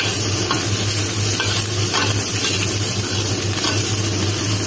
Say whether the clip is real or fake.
real